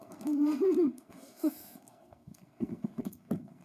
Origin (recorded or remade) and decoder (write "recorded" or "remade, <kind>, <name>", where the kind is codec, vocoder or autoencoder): remade, codec, SNAC